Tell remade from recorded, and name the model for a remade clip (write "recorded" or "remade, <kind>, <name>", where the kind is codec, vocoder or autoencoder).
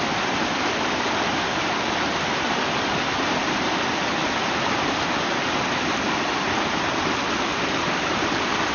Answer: recorded